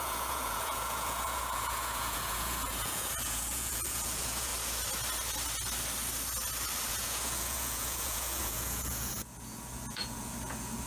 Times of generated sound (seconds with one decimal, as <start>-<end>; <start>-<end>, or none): 0.0-4.5; 6.9-10.9